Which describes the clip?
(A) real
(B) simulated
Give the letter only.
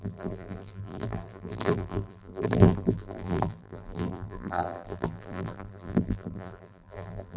B